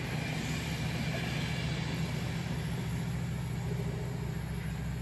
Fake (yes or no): no